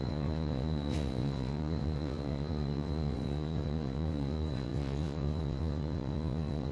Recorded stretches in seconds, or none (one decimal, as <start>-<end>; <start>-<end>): none